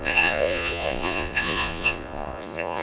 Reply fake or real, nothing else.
fake